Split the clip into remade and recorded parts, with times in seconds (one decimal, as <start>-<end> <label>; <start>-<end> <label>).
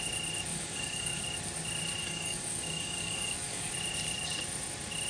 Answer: 0.0-0.5 recorded; 0.5-1.2 remade; 1.2-2.0 recorded; 2.0-3.7 remade; 3.7-5.1 recorded